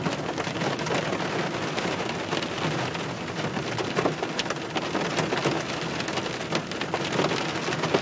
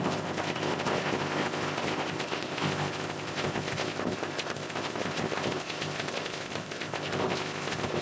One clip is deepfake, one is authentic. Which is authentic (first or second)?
first